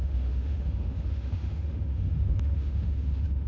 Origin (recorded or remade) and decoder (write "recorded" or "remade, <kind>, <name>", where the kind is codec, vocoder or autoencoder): remade, autoencoder, DAC-VAE